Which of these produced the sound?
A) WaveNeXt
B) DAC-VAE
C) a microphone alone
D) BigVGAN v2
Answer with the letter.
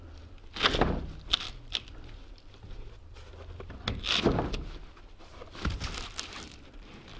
C